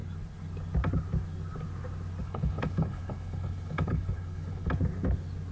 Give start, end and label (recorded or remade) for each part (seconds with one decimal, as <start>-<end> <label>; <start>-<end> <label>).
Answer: 0.0-2.2 recorded; 2.2-4.7 remade; 4.7-5.5 recorded